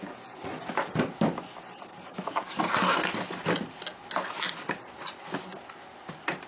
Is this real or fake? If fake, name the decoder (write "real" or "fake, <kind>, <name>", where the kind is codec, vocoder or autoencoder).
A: real